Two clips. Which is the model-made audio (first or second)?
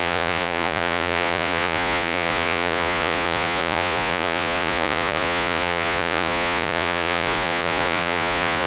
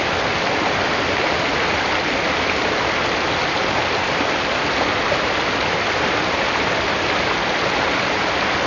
first